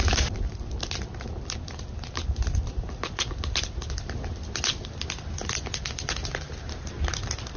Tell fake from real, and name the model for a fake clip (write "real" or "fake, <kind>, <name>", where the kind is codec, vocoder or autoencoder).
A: real